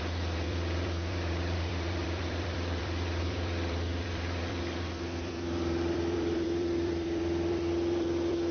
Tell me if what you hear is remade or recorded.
remade